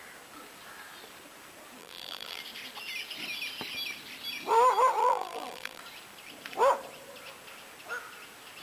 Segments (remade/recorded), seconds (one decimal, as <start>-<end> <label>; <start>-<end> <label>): 0.0-1.8 recorded; 1.8-2.4 remade; 2.4-5.0 recorded; 5.0-5.8 remade; 5.8-8.6 recorded